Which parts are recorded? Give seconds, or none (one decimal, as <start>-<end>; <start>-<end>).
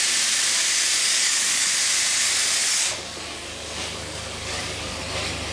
0.0-1.0; 1.7-2.6; 5.0-5.5